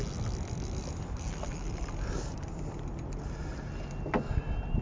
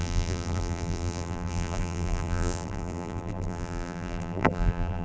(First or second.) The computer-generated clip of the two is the second